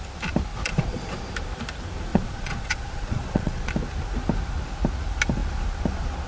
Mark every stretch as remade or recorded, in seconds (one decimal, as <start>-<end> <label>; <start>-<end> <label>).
0.0-0.5 recorded; 0.5-1.1 remade; 1.1-2.1 recorded; 2.1-3.7 remade; 3.7-6.3 recorded